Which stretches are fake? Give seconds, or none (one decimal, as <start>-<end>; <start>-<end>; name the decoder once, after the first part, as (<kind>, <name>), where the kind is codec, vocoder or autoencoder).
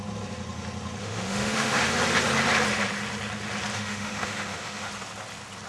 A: 1.0-1.8 (autoencoder, DAC-VAE); 3.7-4.9